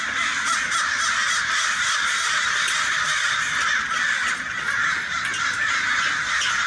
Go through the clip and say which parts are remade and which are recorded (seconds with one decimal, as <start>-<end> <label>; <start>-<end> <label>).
0.0-6.7 recorded

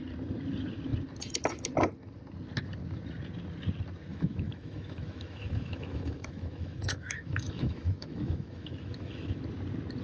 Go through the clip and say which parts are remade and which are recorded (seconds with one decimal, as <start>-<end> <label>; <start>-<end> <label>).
0.0-4.1 recorded; 4.1-9.4 remade; 9.4-10.0 recorded

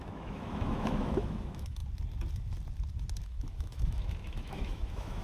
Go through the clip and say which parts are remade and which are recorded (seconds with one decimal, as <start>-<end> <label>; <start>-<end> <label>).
0.0-1.8 remade; 1.8-3.2 recorded; 3.2-5.2 remade

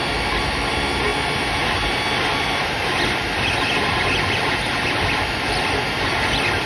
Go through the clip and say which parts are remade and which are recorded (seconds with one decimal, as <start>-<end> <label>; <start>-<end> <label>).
0.0-6.7 recorded

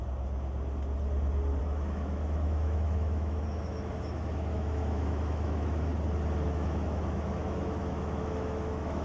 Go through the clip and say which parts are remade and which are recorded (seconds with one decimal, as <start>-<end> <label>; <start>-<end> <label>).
0.0-1.6 recorded; 1.6-5.9 remade; 5.9-6.5 recorded; 6.5-9.0 remade